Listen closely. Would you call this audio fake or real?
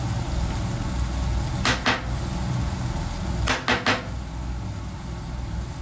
real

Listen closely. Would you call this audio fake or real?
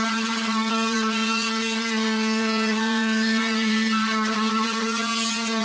fake